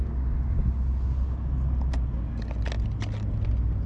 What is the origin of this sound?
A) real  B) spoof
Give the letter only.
A